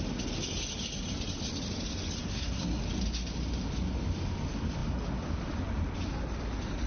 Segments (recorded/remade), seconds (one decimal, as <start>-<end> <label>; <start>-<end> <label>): 0.0-2.3 recorded; 2.3-2.8 remade; 2.8-6.9 recorded